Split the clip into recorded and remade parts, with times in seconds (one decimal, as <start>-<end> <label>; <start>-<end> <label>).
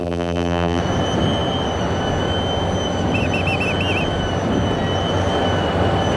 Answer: 0.0-0.8 remade; 0.8-6.2 recorded